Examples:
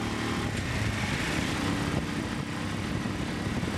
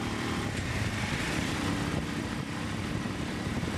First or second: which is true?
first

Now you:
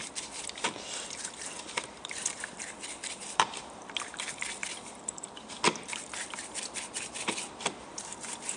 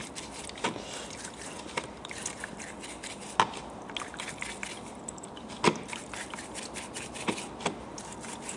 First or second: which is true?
second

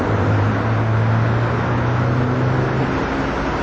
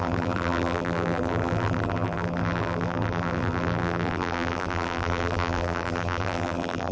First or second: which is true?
first